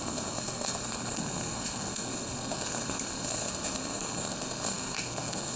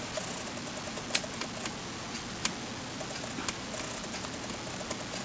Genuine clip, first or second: second